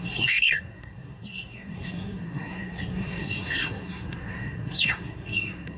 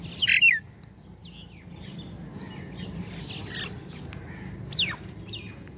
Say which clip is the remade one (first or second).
first